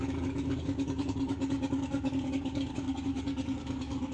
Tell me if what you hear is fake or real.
fake